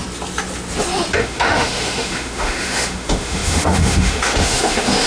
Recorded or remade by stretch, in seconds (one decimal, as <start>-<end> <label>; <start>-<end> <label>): 0.0-1.2 recorded; 1.2-5.1 remade